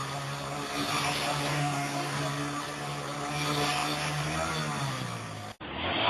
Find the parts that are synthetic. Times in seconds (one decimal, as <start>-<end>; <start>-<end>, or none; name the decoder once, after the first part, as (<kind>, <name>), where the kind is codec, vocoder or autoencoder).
1.5-2.2 (codec, DAC)